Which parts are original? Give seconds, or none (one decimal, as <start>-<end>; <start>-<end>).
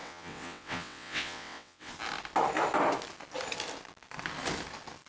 1.9-5.1